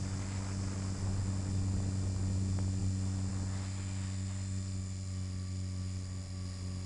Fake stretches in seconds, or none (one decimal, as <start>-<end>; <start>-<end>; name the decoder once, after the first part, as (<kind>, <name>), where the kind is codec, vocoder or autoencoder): none

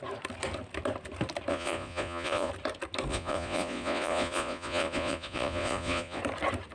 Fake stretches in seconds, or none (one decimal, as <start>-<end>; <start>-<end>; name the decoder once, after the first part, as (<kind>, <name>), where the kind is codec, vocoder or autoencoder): 1.5-2.5 (vocoder, Vocos); 3.1-6.2

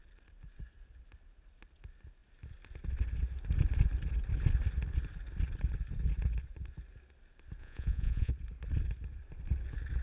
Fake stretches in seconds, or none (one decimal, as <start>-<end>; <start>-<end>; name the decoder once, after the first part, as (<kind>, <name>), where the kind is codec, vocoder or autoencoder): 7.6-8.3 (vocoder, Vocos)